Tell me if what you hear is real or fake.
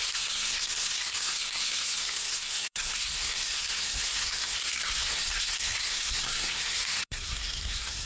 fake